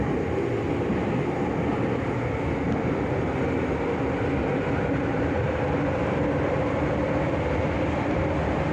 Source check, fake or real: real